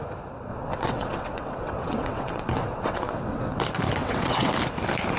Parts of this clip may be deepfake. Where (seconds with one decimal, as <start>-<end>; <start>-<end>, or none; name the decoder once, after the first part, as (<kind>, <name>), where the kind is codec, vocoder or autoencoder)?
0.5-3.6 (vocoder, WaveNeXt); 4.0-4.5

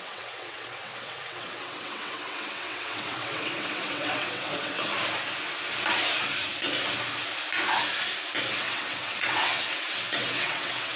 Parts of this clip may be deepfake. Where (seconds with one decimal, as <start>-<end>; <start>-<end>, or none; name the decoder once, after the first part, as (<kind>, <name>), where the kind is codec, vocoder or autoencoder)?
0.0-4.9 (vocoder, WaveNeXt); 8.6-11.0

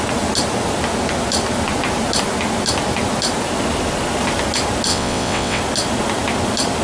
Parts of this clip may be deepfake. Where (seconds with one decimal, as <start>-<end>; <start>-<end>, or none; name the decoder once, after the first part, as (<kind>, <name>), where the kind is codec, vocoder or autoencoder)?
4.9-5.6 (vocoder, WaveNeXt)